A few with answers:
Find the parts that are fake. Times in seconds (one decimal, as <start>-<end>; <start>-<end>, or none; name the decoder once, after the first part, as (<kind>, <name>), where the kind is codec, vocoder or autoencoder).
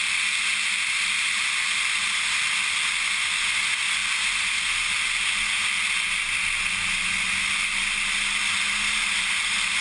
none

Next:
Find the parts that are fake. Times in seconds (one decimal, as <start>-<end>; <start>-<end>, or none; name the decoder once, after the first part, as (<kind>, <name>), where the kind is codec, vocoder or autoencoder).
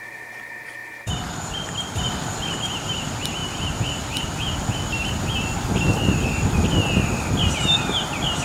0.0-0.8 (vocoder, BigVGAN v2); 2.5-3.4; 7.5-8.4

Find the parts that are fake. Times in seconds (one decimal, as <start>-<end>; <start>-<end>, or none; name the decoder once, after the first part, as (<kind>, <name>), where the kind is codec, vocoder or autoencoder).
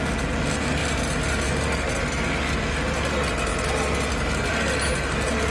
none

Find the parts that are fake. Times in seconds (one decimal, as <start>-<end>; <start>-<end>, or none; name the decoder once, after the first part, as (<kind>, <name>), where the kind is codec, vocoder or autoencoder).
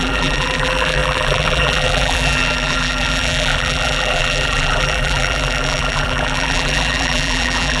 0.0-7.8 (vocoder, BigVGAN v2)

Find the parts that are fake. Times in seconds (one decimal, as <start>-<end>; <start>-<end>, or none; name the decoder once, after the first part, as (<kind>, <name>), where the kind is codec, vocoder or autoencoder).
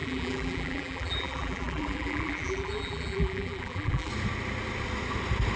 0.0-4.1 (vocoder, BigVGAN v2)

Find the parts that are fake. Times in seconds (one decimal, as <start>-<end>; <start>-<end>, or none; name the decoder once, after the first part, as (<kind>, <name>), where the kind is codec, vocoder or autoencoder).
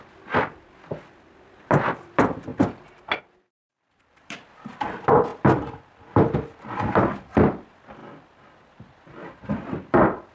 0.0-2.5 (vocoder, BigVGAN v2); 3.2-10.3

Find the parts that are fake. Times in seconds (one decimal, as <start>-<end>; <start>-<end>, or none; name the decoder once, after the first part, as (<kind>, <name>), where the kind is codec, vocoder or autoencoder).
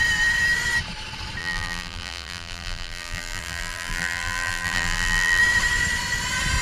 1.4-5.4 (vocoder, BigVGAN v2)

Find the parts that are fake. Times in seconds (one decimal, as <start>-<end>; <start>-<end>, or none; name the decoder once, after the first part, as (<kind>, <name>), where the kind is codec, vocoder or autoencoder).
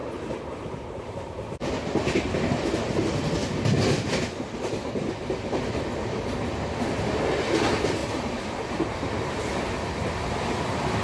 0.0-2.2 (vocoder, BigVGAN v2); 8.0-9.6